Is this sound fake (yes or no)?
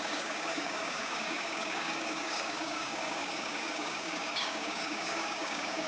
yes